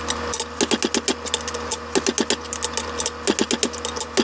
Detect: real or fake real